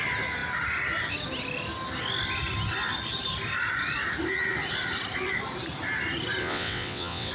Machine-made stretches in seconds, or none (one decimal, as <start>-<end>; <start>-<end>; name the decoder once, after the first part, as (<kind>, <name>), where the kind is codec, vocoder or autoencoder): 6.4-7.3 (vocoder, WaveNeXt)